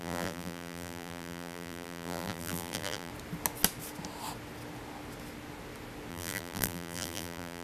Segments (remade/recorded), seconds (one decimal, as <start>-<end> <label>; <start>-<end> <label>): 0.0-3.1 remade; 3.1-6.1 recorded; 6.1-7.6 remade